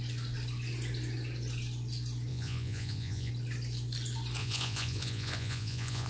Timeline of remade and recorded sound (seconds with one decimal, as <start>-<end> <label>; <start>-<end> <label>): 0.0-2.3 recorded; 2.3-3.3 remade; 3.3-4.4 recorded; 4.4-6.1 remade